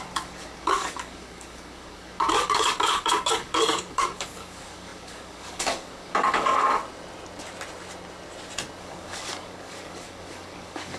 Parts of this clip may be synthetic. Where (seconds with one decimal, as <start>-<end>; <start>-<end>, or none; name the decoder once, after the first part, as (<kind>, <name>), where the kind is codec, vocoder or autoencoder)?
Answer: 0.0-6.8 (codec, DAC); 8.8-11.0